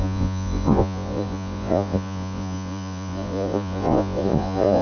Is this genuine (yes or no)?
no